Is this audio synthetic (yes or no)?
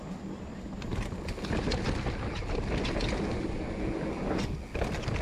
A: no